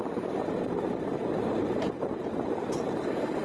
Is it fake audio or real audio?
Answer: fake